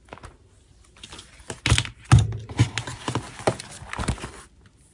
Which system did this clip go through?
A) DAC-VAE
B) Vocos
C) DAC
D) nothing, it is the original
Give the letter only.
D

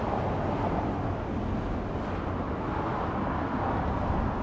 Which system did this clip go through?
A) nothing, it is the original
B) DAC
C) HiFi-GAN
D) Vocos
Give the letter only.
A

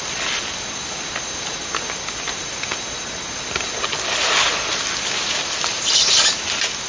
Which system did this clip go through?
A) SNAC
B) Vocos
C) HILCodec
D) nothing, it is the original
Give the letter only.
D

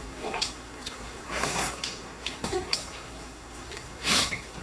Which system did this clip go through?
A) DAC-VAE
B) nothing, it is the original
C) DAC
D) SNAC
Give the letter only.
D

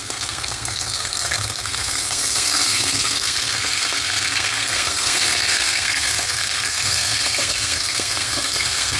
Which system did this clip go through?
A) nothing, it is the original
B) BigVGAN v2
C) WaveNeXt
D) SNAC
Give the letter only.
D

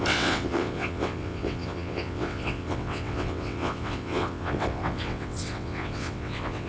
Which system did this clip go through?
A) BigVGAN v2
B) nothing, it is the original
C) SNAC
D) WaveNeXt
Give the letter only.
D